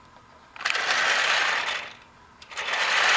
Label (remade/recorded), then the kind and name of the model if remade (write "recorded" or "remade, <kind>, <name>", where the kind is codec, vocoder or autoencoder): recorded